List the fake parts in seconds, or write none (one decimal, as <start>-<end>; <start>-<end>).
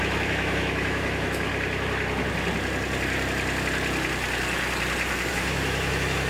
0.0-1.5; 5.3-6.3